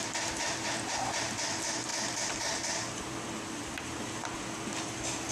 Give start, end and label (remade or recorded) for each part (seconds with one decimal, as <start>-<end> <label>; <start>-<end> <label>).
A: 0.0-5.3 recorded